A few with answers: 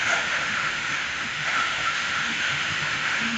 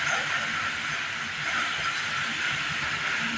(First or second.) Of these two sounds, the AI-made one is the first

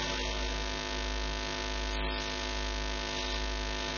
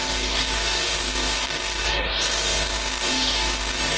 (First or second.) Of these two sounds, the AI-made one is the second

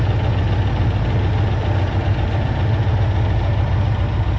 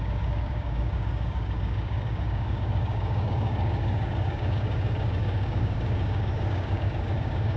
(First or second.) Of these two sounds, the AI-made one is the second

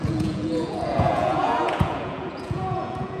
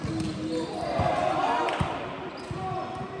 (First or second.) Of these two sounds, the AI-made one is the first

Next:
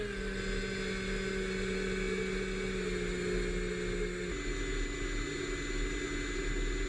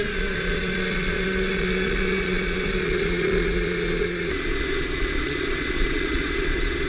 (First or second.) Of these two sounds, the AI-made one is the second